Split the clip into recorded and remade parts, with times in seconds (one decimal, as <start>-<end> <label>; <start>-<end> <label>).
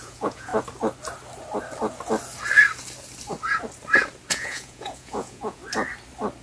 0.0-0.5 remade; 0.5-4.3 recorded; 4.3-5.6 remade; 5.6-6.4 recorded